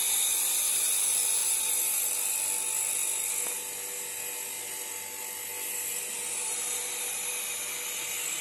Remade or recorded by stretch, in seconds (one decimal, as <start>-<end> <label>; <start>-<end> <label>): 0.0-1.4 recorded; 1.4-2.1 remade; 2.1-8.4 recorded